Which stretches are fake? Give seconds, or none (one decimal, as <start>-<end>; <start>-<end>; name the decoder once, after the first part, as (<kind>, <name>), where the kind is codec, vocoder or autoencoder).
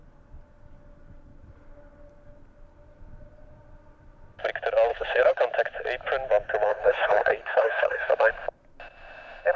4.9-5.4 (codec, HILCodec); 6.7-8.1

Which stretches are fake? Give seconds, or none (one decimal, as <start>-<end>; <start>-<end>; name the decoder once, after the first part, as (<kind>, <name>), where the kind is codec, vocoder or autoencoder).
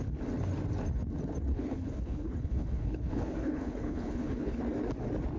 1.5-4.6 (codec, HILCodec)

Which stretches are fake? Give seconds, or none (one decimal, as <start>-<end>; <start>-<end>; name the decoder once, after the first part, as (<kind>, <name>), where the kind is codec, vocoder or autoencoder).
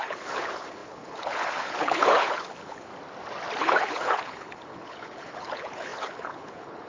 0.0-2.9 (codec, HILCodec); 3.6-6.9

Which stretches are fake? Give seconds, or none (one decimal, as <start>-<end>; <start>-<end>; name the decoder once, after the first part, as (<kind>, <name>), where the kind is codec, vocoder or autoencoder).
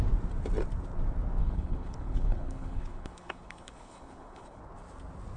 1.4-4.6 (codec, HILCodec)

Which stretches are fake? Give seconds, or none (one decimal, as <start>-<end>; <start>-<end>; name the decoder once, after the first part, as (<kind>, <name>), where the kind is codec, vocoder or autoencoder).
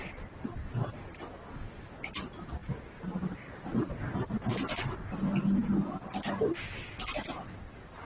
none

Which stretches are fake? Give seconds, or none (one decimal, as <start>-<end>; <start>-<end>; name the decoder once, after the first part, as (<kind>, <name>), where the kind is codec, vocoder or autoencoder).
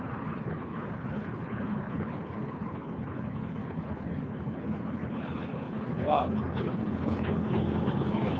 0.0-8.4 (codec, HILCodec)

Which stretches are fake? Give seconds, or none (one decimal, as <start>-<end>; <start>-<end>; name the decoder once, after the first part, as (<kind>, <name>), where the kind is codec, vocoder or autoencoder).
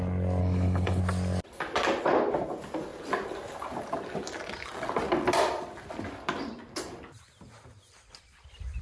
0.4-1.0 (codec, HILCodec)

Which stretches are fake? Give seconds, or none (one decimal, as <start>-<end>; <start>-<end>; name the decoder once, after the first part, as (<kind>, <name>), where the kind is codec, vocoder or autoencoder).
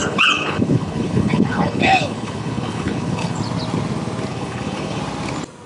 0.0-3.4 (codec, HILCodec); 4.3-5.0